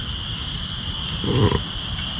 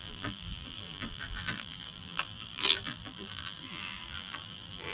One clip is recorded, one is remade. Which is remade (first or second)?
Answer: second